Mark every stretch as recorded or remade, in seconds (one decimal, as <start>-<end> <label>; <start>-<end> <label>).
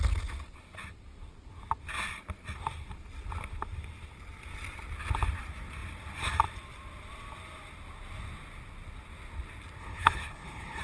0.0-9.8 recorded; 9.8-10.8 remade